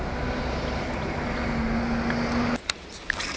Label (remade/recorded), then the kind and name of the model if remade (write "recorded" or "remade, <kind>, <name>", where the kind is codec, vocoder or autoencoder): recorded